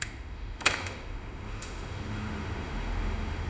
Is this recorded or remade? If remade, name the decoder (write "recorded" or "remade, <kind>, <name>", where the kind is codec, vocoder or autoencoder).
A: remade, autoencoder, DAC-VAE